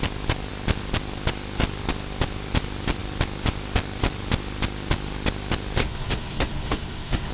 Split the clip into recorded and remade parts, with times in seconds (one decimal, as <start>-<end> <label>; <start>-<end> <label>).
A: 0.0-5.8 recorded; 5.8-7.3 remade